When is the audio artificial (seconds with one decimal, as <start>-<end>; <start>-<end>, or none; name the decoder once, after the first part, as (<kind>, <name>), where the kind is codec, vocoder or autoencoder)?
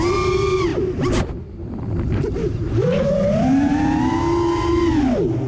0.7-3.1 (vocoder, BigVGAN v2)